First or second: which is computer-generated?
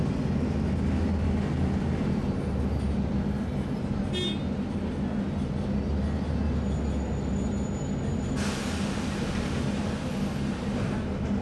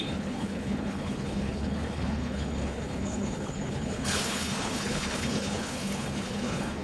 second